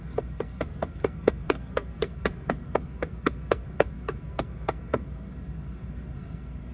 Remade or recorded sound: remade